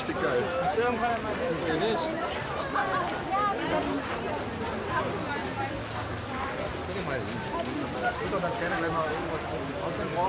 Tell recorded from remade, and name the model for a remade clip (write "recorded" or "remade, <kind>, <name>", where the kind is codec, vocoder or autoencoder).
recorded